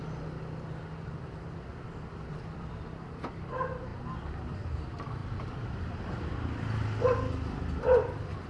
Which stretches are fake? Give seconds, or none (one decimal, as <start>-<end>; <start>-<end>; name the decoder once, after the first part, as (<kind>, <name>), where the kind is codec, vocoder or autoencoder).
1.7-2.7 (vocoder, BigVGAN v2); 5.2-5.9